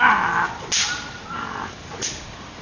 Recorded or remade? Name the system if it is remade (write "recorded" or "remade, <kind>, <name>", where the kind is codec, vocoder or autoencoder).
recorded